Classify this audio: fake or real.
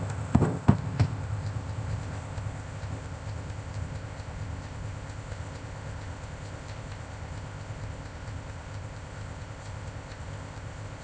fake